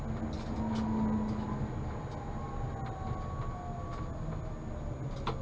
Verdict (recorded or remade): recorded